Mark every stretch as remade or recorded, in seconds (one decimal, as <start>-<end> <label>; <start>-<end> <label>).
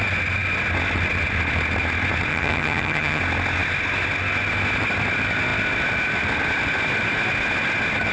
0.0-2.3 recorded; 2.3-3.2 remade; 3.2-8.1 recorded